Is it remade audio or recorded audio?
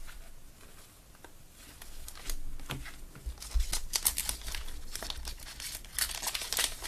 recorded